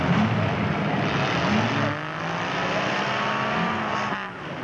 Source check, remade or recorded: recorded